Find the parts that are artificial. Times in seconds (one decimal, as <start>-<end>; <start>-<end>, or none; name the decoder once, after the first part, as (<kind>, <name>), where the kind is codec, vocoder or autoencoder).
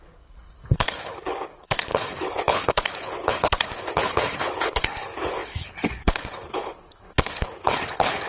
0.0-8.3 (codec, HILCodec)